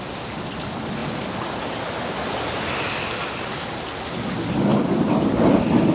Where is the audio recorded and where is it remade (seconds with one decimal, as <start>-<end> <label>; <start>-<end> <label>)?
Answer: 0.0-5.9 recorded